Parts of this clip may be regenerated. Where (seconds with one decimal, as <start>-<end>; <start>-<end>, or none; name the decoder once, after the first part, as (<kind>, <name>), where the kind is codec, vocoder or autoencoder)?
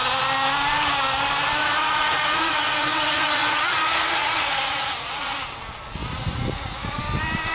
1.6-5.4 (vocoder, Vocos); 6.0-7.0